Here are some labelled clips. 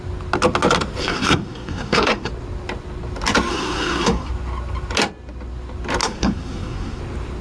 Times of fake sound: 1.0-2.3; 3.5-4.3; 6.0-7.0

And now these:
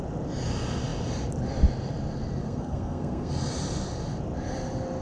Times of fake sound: 2.4-3.3